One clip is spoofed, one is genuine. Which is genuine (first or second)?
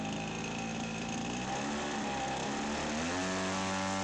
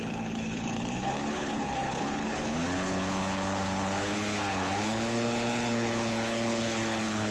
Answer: first